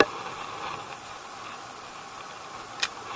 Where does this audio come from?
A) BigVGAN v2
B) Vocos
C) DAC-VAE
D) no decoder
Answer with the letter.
D